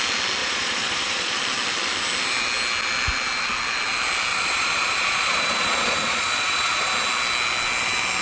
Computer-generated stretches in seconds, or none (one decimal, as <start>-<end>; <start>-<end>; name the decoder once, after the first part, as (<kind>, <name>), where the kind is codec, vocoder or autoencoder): 0.4-1.4 (vocoder, Vocos); 4.3-6.9